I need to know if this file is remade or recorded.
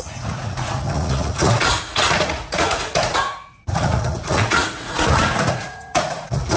remade